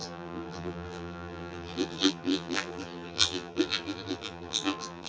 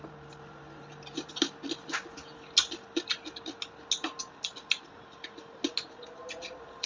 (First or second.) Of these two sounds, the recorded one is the second